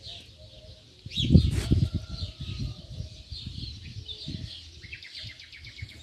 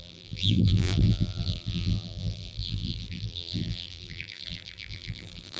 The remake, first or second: second